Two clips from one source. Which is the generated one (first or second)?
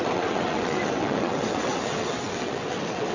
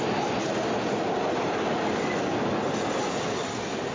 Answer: first